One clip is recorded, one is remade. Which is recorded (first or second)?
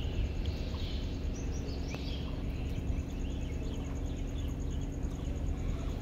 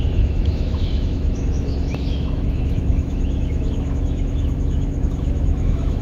first